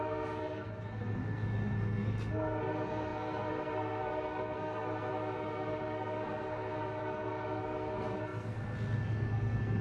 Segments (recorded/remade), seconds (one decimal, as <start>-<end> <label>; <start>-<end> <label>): 0.0-9.8 remade